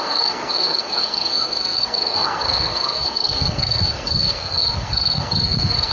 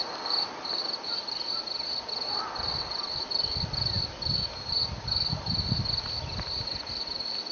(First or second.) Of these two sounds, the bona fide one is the second